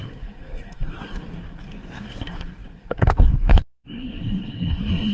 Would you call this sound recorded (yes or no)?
no